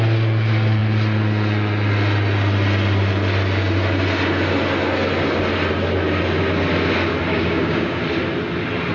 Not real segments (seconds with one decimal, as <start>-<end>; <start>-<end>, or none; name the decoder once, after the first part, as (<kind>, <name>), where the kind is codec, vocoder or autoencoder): 7.3-8.0 (codec, DAC)